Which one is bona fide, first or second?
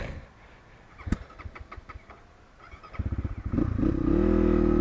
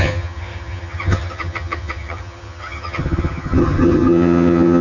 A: first